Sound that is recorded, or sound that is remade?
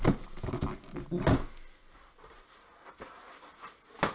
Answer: recorded